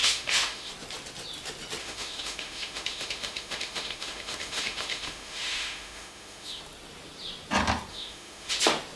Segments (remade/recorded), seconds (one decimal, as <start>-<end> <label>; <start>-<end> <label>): 0.0-0.7 remade; 0.7-1.8 recorded; 1.8-6.6 remade; 6.6-7.9 recorded; 7.9-8.6 remade; 8.6-9.0 recorded